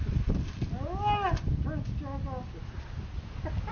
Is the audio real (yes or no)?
yes